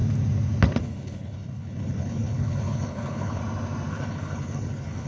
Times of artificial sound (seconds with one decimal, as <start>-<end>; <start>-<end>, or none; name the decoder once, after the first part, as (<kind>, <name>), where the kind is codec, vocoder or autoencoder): 0.8-3.4 (codec, HILCodec); 3.9-5.1